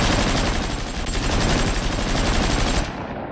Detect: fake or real real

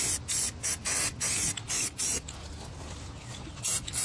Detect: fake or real real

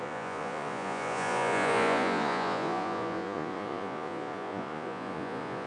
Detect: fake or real fake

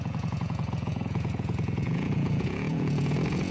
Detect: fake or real fake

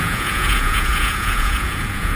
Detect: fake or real fake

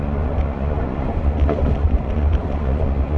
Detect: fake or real fake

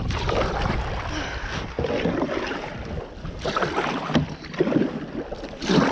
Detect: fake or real real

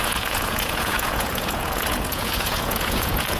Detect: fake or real fake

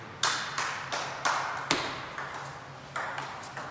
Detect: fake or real real